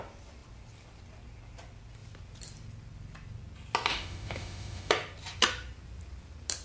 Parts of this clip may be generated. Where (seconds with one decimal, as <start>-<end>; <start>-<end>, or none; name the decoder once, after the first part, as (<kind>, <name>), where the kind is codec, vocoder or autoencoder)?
3.9-4.9 (autoencoder, DAC-VAE)